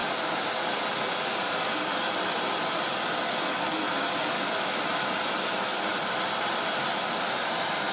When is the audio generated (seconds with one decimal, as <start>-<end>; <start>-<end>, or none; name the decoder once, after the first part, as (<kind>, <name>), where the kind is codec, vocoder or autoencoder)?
none